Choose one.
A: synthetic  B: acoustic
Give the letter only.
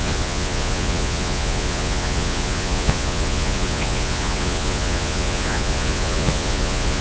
A